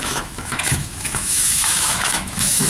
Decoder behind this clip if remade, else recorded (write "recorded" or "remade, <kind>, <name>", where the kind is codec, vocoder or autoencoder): remade, autoencoder, DAC-VAE